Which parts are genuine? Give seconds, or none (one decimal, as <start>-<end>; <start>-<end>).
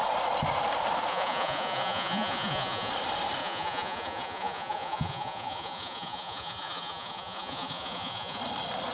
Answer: 0.0-1.1; 2.9-3.4; 8.4-8.9